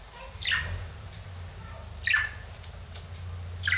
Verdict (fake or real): real